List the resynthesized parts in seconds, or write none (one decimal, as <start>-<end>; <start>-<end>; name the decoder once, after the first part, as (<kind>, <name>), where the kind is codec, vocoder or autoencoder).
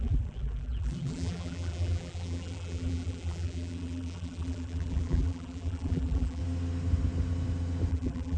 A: 0.0-6.4 (vocoder, BigVGAN v2); 7.9-8.4